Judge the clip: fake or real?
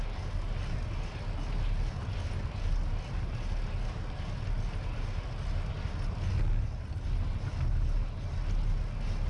real